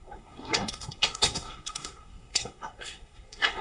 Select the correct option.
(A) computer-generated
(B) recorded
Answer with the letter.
A